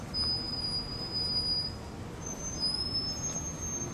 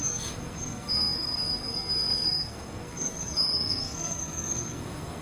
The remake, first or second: second